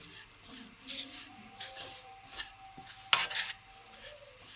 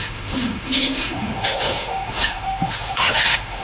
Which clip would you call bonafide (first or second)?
first